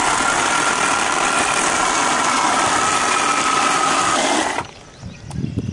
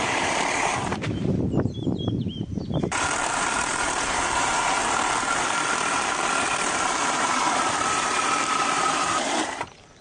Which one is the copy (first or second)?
second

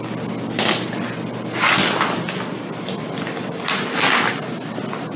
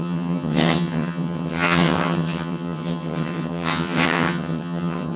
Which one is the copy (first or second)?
second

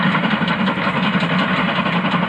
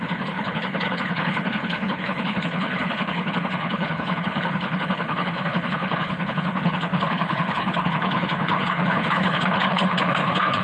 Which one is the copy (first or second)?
second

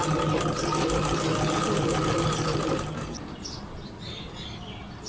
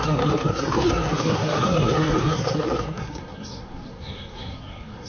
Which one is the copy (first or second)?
second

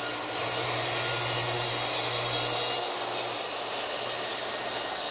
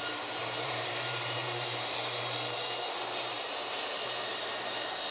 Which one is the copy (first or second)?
second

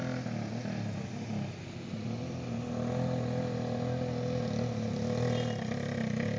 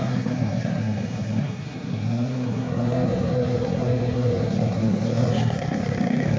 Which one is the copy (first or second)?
second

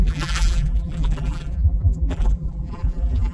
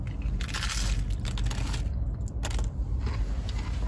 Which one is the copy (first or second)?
first